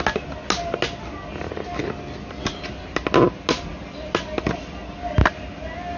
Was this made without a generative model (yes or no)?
yes